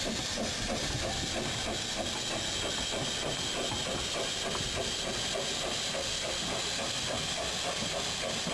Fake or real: real